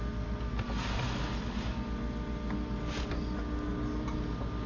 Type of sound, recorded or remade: recorded